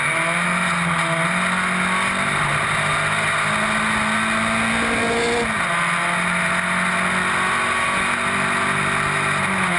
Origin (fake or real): real